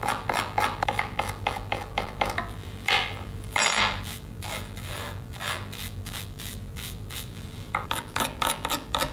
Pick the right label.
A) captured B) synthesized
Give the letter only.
B